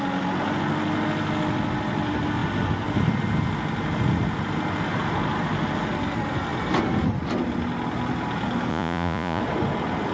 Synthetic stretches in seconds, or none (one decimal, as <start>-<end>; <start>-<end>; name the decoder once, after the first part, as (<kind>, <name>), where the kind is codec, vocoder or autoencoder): 8.7-9.4 (vocoder, Vocos)